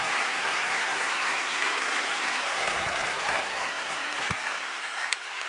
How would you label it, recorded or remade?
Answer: remade